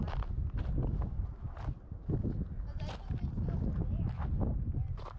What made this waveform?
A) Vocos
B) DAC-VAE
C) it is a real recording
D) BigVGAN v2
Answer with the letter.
C